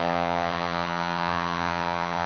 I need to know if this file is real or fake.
fake